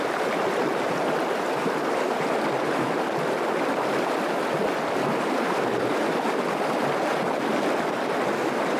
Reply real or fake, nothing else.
real